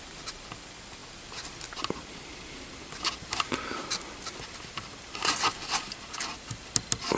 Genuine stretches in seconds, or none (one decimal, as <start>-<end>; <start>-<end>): 0.0-7.2

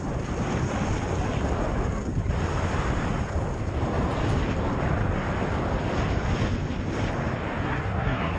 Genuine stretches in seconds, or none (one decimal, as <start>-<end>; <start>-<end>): 0.0-7.6

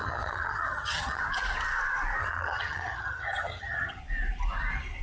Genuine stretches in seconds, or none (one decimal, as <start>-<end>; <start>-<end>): 1.2-2.2; 4.0-5.0

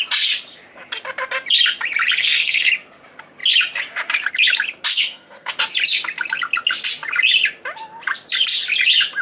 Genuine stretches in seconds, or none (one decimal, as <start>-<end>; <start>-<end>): 0.0-2.2; 2.7-4.9; 5.5-9.2

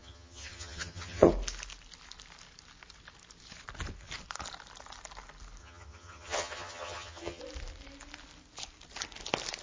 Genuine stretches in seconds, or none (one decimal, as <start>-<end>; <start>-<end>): 1.3-5.6; 7.4-9.6

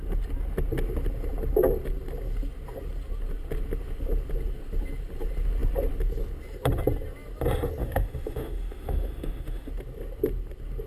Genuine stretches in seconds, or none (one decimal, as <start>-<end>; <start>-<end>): 0.0-7.8; 9.7-10.9

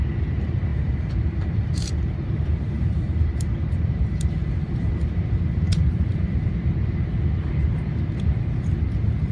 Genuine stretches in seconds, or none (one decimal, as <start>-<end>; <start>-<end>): 0.0-0.7; 3.5-4.4; 4.9-5.8; 6.4-9.3

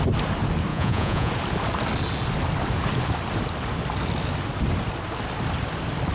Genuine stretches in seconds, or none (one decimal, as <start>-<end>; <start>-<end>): 0.0-0.7; 1.3-6.1